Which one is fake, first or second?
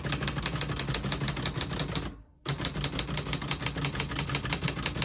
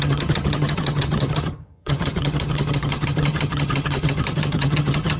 second